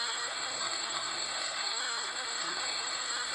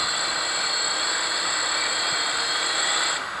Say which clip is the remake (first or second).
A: first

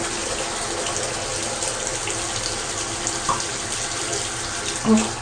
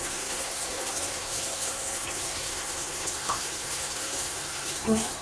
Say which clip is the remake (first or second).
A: second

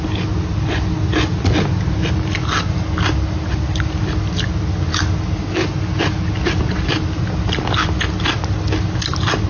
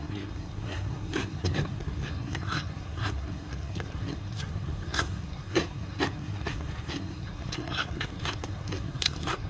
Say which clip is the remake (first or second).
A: second